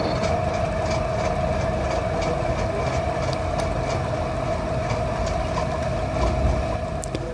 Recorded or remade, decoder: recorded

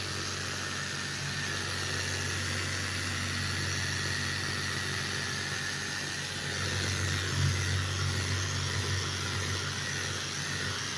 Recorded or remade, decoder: recorded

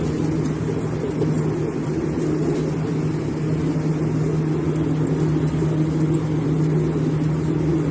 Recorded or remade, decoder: recorded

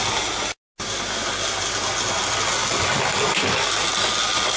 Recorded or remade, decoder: recorded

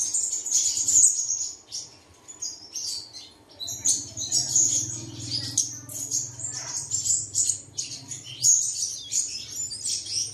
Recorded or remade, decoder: recorded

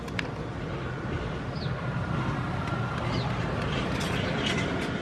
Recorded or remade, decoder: recorded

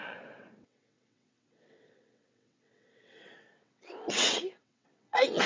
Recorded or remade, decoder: remade, vocoder, WaveNeXt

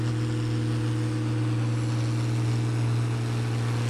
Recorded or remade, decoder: recorded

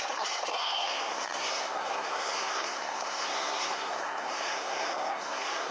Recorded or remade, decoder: remade, codec, SNAC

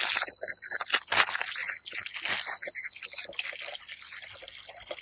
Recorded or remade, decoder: recorded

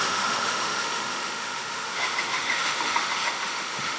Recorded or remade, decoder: remade, autoencoder, DAC-VAE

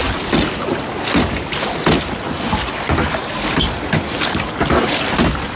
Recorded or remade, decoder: recorded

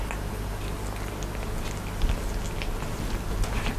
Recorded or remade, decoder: recorded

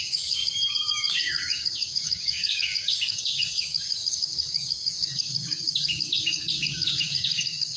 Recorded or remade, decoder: remade, codec, DAC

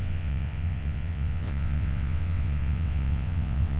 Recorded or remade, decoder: remade, vocoder, WaveNeXt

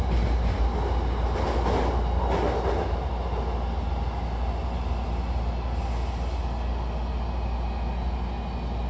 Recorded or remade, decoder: recorded